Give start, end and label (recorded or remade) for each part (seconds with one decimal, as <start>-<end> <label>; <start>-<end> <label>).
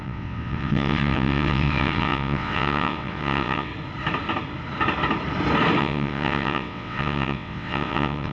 0.0-3.7 remade; 3.7-5.8 recorded; 5.8-8.3 remade